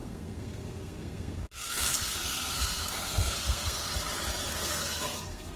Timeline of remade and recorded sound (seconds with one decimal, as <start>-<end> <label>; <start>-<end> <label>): 0.0-3.9 remade; 3.9-4.5 recorded; 4.5-5.6 remade